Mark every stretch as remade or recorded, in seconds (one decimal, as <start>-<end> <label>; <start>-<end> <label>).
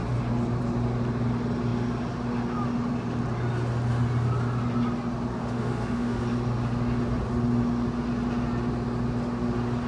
0.0-5.4 recorded; 5.4-6.2 remade; 6.2-9.9 recorded